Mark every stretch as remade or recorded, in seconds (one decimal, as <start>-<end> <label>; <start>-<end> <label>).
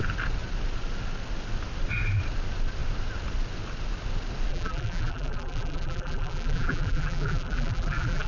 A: 0.0-4.5 recorded; 4.5-8.3 remade